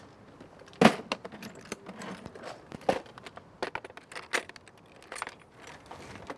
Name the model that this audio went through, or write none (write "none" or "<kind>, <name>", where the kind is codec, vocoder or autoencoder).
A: none